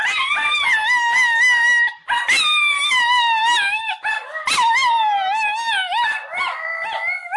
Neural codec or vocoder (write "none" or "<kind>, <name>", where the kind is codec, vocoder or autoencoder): none